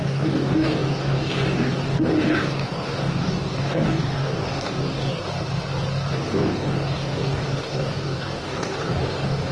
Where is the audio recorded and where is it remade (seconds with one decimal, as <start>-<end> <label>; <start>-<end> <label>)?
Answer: 0.0-5.2 remade; 5.2-6.1 recorded; 6.1-9.5 remade